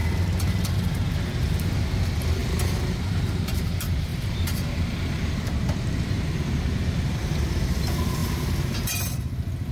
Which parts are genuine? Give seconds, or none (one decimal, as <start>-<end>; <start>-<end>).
0.0-2.4; 3.6-4.1; 7.5-9.7